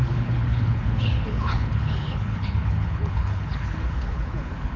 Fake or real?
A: fake